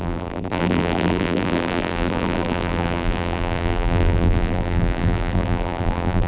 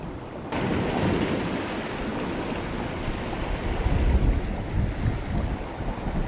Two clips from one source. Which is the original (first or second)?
second